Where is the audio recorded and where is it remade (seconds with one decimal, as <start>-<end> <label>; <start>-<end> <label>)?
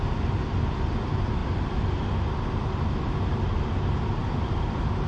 0.0-5.1 recorded